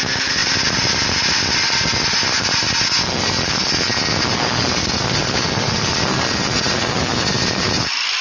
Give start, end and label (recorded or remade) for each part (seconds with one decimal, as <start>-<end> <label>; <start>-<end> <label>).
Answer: 0.0-8.2 recorded